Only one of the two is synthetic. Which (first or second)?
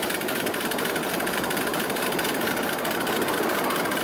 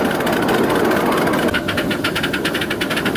first